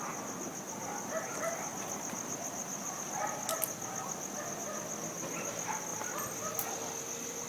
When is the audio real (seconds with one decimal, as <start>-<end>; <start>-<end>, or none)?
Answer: 0.0-7.5